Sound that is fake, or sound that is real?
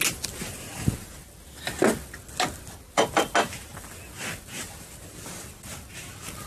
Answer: real